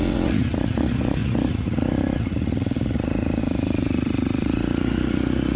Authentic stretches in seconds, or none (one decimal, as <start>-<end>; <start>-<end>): none